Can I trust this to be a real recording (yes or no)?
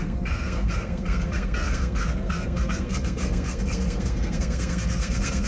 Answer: no